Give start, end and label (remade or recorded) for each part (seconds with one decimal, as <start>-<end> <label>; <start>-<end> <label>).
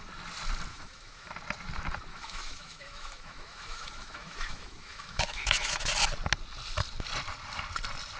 0.0-0.7 recorded; 0.7-1.3 remade; 1.3-2.1 recorded; 2.1-5.9 remade; 5.9-8.2 recorded